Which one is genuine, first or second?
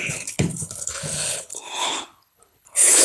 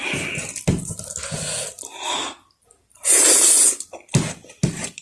second